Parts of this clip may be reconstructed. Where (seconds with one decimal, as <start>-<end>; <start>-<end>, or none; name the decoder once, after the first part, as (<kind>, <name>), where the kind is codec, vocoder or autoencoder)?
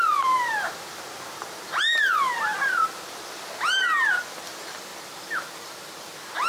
4.9-5.5 (vocoder, BigVGAN v2)